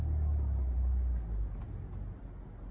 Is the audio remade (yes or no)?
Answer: no